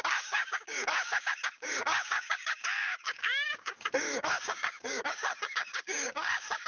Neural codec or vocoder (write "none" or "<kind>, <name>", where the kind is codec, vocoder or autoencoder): codec, DAC